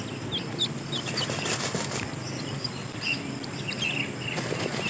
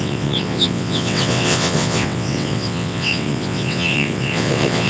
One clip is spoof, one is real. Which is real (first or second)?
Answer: first